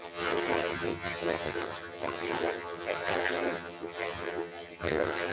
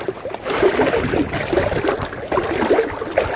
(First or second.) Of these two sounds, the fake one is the first